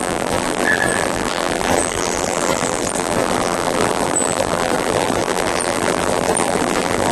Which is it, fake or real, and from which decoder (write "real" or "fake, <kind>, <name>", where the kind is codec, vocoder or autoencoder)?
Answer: fake, vocoder, BigVGAN v2